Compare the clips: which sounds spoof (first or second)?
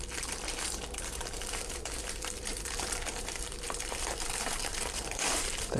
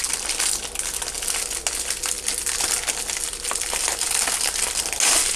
first